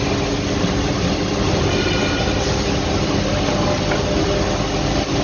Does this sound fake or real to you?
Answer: real